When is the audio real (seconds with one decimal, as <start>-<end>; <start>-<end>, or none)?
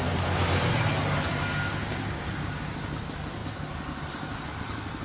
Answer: 0.0-1.8; 2.7-5.0